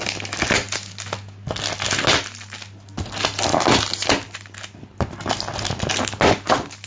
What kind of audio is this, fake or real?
real